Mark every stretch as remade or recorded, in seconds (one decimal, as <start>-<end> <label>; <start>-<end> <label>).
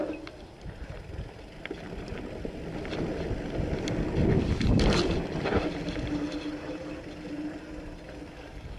0.0-8.2 recorded; 8.2-8.8 remade